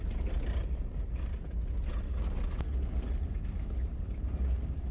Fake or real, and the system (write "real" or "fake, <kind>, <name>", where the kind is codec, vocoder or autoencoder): real